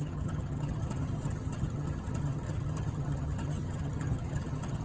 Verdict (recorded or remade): remade